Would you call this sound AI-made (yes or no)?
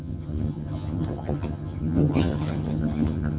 yes